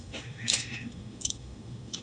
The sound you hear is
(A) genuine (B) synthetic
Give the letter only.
B